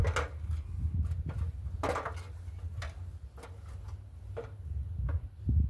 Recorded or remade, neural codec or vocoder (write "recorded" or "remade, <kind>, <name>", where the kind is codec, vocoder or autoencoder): recorded